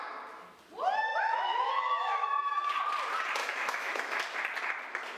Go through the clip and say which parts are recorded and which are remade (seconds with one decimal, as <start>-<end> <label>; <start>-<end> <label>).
0.0-1.1 recorded; 1.1-2.7 remade; 2.7-3.4 recorded; 3.4-4.2 remade; 4.2-5.2 recorded